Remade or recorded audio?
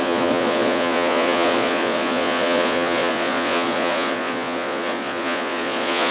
remade